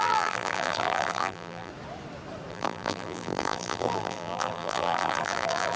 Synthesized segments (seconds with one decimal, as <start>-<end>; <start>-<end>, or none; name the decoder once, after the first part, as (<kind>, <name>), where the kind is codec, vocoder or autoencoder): 0.0-1.7 (vocoder, BigVGAN v2); 2.5-5.8